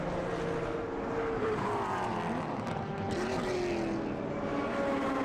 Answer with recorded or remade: recorded